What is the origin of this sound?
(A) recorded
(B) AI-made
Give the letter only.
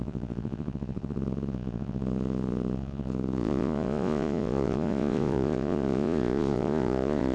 B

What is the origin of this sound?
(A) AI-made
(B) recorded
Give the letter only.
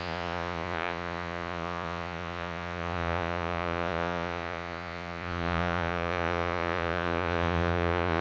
A